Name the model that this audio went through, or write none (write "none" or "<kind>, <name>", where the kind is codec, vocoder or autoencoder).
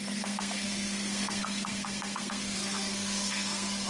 codec, SNAC